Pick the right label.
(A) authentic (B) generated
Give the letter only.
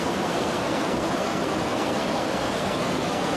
B